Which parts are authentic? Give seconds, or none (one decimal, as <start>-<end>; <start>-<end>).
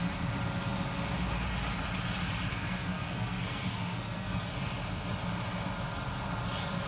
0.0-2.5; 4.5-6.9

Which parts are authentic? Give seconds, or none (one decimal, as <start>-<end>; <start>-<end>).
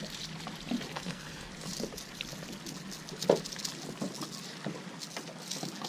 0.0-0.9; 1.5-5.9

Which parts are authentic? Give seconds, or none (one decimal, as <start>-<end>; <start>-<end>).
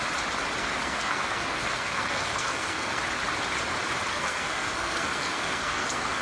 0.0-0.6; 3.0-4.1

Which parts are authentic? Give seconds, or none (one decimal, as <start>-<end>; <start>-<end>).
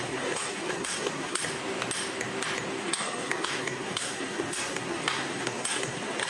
1.4-2.8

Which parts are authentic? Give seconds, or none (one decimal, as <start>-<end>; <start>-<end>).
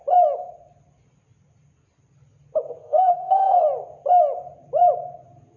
0.0-2.8; 3.6-5.6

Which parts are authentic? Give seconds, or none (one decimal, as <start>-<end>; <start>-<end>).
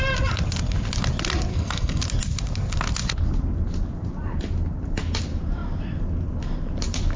0.0-1.5; 2.0-7.2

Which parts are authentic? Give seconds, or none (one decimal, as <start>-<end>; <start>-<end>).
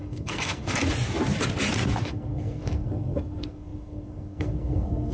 0.8-2.0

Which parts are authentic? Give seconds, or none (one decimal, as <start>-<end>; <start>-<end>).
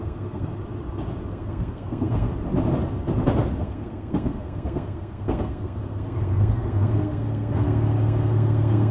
0.5-1.3; 2.3-3.6